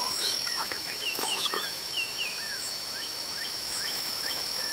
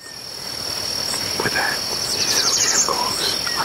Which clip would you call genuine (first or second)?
second